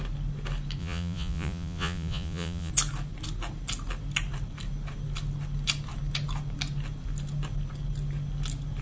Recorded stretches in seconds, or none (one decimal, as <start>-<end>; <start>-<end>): 0.0-0.8; 2.7-8.8